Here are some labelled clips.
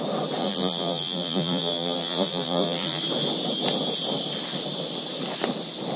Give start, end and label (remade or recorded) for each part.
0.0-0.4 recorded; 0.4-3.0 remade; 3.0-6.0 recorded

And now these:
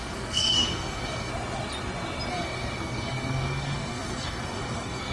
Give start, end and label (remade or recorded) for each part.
0.0-1.3 remade; 1.3-2.3 recorded; 2.3-5.1 remade

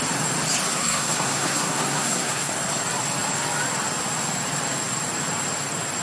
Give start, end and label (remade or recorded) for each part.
0.0-0.7 recorded; 0.7-2.5 remade; 2.5-6.0 recorded

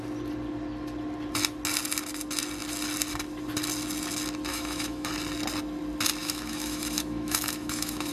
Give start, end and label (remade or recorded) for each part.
0.0-4.5 recorded; 4.5-5.1 remade; 5.1-6.2 recorded; 6.2-8.1 remade